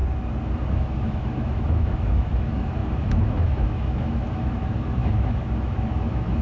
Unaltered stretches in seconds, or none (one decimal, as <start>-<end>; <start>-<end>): 0.0-0.7